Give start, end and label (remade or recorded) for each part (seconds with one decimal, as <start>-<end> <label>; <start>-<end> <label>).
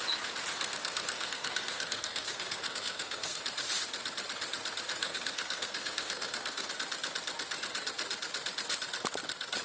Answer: 0.0-0.5 recorded; 0.5-3.4 remade; 3.4-5.0 recorded; 5.0-6.7 remade; 6.7-9.6 recorded